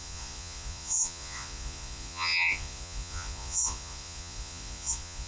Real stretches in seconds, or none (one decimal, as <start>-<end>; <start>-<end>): none

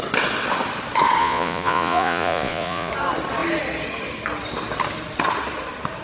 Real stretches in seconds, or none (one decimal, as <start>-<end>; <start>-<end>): 0.0-1.2; 2.9-6.0

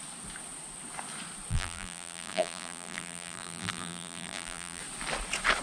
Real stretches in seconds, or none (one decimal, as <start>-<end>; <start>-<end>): 0.0-1.5; 4.8-5.6

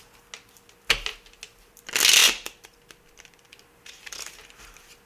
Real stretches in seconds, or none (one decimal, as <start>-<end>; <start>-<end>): 0.0-5.1

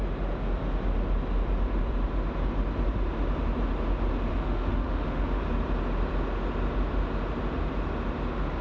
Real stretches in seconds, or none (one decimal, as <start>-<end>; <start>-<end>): 0.0-4.3; 5.4-8.6

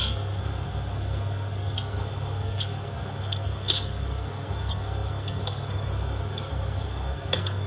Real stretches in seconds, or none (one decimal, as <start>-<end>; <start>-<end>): none

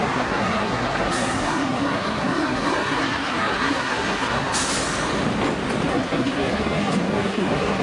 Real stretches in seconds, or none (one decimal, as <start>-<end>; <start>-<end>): 4.7-5.9